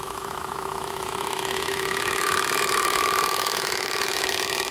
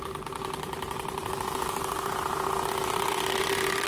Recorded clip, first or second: second